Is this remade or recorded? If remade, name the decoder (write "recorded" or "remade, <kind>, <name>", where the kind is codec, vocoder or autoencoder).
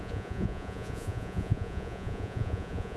remade, vocoder, Vocos